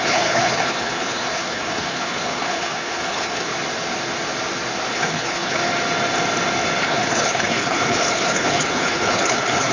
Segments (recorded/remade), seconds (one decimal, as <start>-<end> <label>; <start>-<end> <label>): 0.0-3.5 remade; 3.5-4.9 recorded; 4.9-5.6 remade; 5.6-6.8 recorded; 6.8-9.7 remade